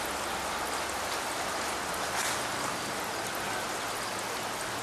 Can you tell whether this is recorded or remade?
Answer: recorded